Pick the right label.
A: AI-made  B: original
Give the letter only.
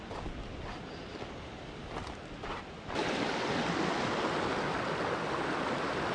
B